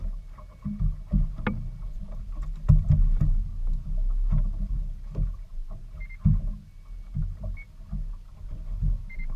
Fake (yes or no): no